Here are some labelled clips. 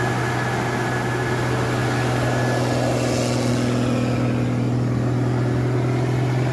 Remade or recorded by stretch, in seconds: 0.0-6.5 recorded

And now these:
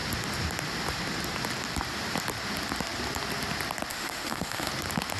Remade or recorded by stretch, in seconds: 0.0-3.9 recorded; 3.9-4.7 remade; 4.7-5.2 recorded

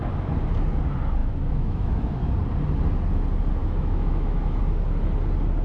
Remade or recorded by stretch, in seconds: 0.0-1.2 recorded; 1.2-2.3 remade; 2.3-3.6 recorded; 3.6-4.6 remade; 4.6-5.6 recorded

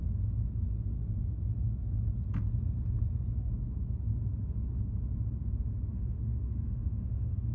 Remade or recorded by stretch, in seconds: 0.0-5.9 recorded; 5.9-7.5 remade

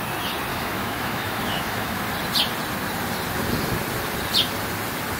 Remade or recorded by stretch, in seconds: 0.0-0.5 recorded; 0.5-2.0 remade; 2.0-5.2 recorded

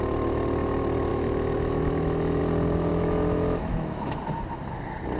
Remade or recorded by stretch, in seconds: 0.0-1.1 recorded; 1.1-2.4 remade; 2.4-2.9 recorded; 2.9-4.2 remade; 4.2-5.2 recorded